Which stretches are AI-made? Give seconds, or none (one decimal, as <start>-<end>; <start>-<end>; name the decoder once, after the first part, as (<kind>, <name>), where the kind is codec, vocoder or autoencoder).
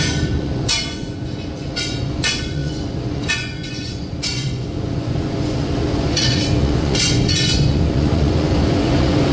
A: 0.0-9.3 (vocoder, Vocos)